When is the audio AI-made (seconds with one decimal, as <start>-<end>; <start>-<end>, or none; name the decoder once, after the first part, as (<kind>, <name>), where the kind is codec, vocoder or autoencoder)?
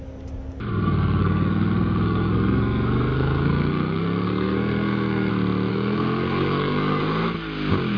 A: 0.7-5.3 (codec, SNAC); 5.7-7.0